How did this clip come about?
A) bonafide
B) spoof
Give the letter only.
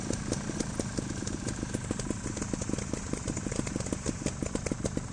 A